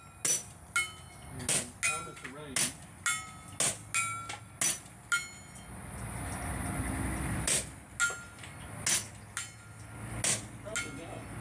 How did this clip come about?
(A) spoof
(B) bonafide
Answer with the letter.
B